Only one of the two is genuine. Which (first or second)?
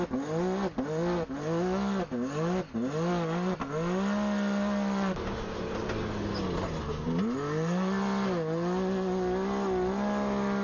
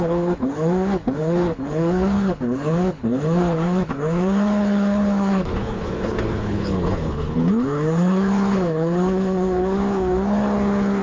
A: first